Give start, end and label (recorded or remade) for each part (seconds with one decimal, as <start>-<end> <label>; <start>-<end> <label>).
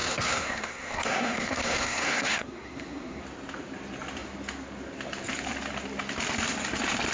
0.0-3.2 remade; 3.2-7.1 recorded